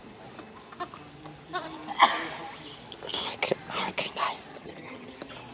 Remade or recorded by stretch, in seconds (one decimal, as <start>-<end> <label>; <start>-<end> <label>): 0.0-4.5 recorded; 4.5-5.1 remade; 5.1-5.5 recorded